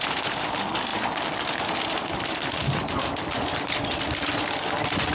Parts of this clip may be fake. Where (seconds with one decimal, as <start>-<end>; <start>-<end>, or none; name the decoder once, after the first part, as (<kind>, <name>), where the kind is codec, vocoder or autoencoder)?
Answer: none